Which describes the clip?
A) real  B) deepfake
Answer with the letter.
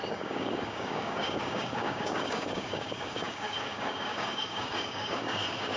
B